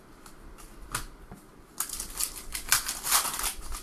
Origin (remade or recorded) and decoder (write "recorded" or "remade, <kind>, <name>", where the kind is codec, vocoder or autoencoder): recorded